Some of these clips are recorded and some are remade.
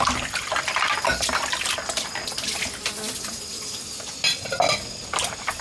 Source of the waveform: recorded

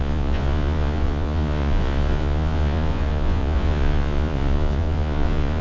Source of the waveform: remade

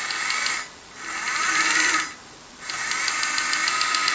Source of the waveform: recorded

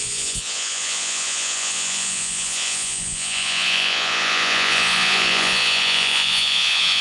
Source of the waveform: remade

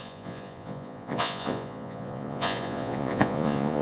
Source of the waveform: remade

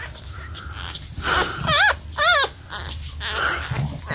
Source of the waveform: recorded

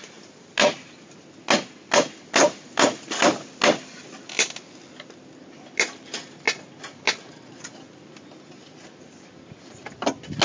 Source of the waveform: recorded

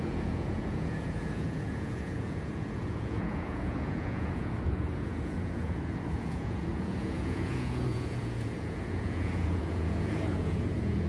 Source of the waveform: remade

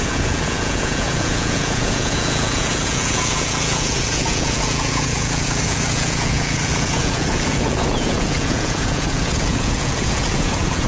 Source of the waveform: remade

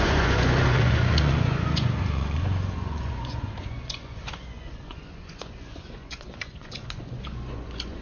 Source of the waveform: remade